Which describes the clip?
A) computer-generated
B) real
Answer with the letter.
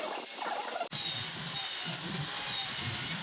B